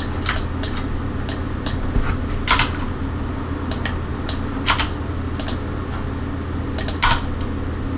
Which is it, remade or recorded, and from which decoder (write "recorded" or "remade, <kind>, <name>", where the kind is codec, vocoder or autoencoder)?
recorded